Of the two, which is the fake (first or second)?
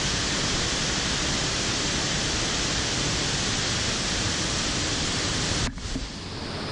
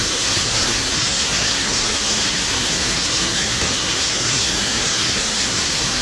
second